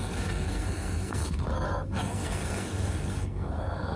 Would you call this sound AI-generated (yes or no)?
yes